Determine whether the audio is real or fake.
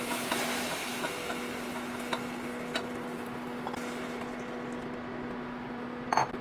real